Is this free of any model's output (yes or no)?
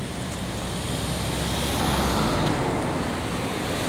yes